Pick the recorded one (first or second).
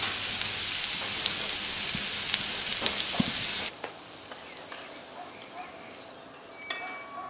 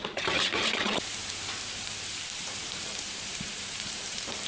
first